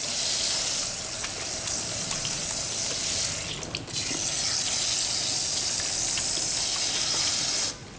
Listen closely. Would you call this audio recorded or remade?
recorded